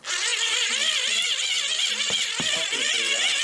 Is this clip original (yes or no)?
yes